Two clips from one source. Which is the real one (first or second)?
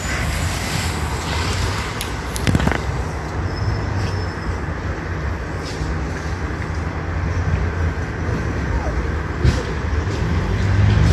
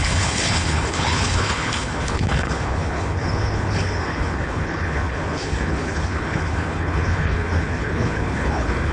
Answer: first